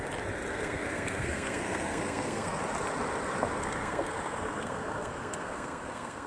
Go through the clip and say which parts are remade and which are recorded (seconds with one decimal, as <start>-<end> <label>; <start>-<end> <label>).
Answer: 0.0-0.5 recorded; 0.5-2.6 remade; 2.6-3.6 recorded; 3.6-6.3 remade